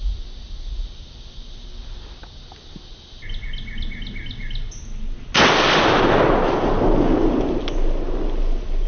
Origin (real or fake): real